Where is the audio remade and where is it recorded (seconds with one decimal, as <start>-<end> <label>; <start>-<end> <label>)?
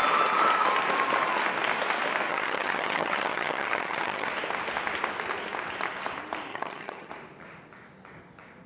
0.0-2.3 recorded; 2.3-4.3 remade; 4.3-6.5 recorded; 6.5-7.1 remade; 7.1-8.7 recorded